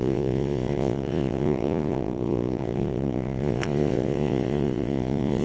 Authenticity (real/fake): fake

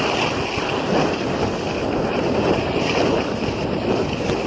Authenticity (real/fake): real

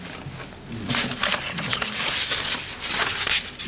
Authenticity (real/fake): real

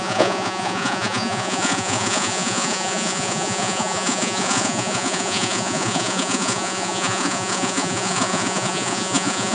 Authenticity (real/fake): fake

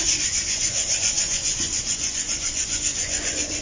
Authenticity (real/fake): fake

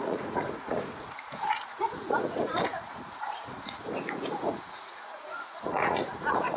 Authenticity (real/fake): fake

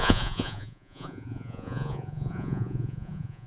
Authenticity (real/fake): fake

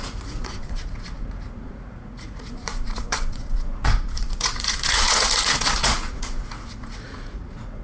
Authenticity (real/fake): fake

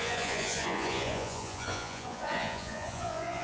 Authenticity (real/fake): fake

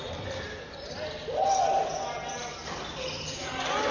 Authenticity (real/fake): real